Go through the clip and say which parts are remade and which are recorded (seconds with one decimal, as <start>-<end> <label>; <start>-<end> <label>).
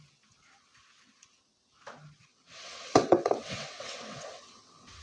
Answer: 0.0-2.3 recorded; 2.3-5.0 remade